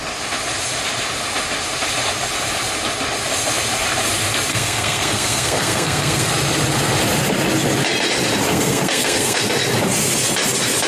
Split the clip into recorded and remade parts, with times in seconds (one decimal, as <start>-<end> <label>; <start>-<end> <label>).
0.0-4.5 recorded; 4.5-6.3 remade; 6.3-8.5 recorded; 8.5-9.5 remade; 9.5-10.9 recorded